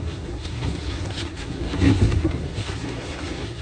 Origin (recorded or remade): remade